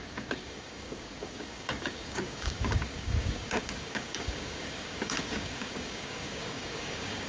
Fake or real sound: fake